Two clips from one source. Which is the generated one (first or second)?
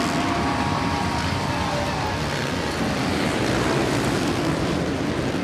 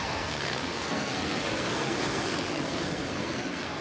second